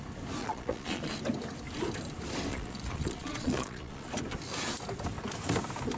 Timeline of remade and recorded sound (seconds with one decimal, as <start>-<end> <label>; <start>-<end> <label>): 0.0-0.4 recorded; 0.4-1.1 remade; 1.1-2.5 recorded; 2.5-4.1 remade; 4.1-6.0 recorded